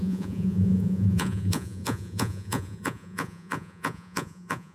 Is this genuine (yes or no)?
no